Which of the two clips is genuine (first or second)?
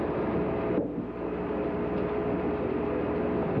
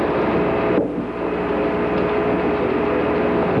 second